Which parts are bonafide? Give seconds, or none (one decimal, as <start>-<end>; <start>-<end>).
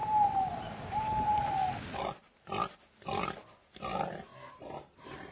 1.6-4.8